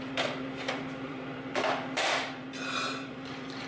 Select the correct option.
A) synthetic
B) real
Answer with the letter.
A